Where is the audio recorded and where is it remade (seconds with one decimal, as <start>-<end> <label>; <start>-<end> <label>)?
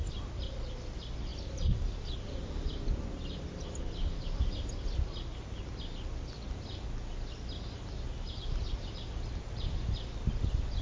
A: 0.0-10.8 recorded